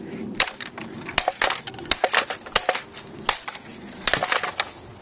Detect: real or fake real